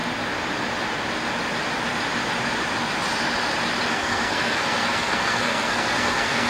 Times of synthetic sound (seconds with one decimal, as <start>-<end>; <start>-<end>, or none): 3.9-6.5